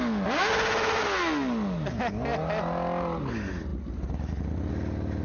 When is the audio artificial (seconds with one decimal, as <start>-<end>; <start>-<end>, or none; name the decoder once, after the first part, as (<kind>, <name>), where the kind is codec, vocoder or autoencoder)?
none